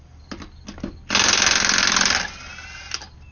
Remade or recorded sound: recorded